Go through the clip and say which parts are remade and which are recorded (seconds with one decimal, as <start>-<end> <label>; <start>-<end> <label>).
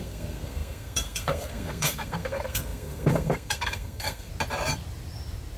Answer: 0.0-4.3 remade; 4.3-5.6 recorded